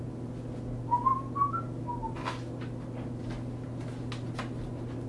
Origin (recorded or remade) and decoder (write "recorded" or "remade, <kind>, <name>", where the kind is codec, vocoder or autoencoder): recorded